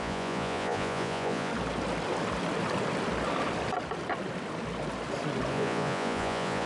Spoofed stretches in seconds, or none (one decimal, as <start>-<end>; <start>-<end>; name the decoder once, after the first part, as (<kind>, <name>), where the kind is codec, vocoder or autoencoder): 0.0-1.5 (vocoder, Vocos); 5.5-6.7